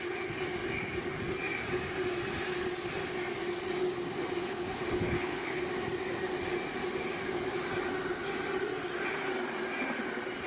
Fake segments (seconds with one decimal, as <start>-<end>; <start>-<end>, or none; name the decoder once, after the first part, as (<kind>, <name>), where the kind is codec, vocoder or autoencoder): 4.4-5.6 (codec, HILCodec)